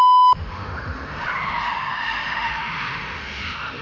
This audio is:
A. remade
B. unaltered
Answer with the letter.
A